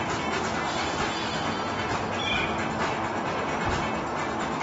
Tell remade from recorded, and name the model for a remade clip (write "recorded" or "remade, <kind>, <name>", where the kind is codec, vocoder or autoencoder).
recorded